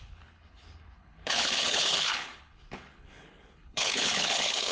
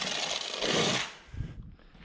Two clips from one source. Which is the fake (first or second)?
first